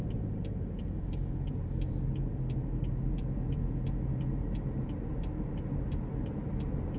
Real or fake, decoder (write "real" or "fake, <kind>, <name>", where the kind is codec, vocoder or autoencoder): real